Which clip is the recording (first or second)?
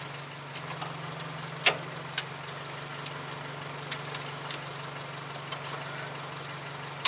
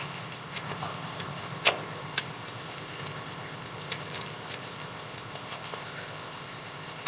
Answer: first